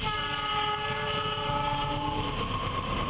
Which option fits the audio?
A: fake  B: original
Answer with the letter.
A